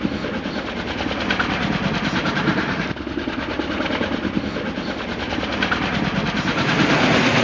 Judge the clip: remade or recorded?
recorded